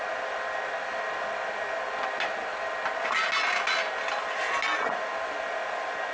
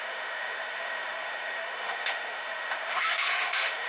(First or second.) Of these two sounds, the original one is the first